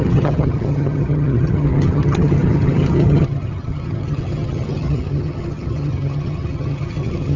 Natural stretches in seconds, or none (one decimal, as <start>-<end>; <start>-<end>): none